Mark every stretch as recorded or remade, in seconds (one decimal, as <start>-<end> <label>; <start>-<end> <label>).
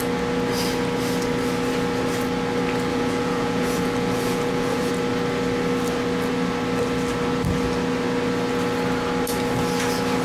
0.0-2.9 recorded; 2.9-4.9 remade; 4.9-10.2 recorded